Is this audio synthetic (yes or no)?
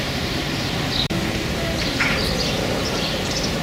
yes